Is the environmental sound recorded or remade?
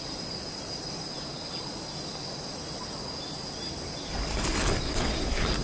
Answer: recorded